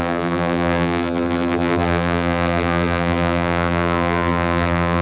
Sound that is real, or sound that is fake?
fake